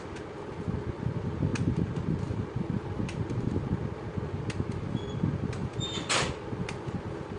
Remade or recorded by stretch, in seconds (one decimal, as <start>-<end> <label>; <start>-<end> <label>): 0.0-7.4 recorded

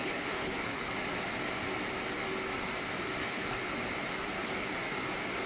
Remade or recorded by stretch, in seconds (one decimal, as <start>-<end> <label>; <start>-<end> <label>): 0.0-0.9 remade; 0.9-3.2 recorded; 3.2-3.7 remade; 3.7-5.5 recorded

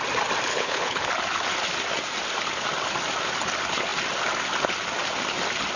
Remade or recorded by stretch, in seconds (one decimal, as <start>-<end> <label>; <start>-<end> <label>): 0.0-0.5 recorded; 0.5-1.1 remade; 1.1-5.8 recorded

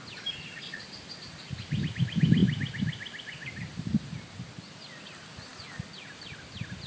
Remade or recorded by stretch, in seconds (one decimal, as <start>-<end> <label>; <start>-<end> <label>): 0.0-6.9 recorded

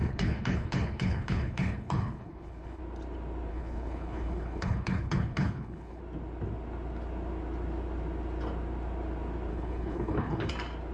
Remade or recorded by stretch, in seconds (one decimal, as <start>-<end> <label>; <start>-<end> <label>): 0.0-2.8 remade; 2.8-3.5 recorded; 3.5-6.0 remade; 6.0-9.5 recorded; 9.5-10.5 remade; 10.5-10.9 recorded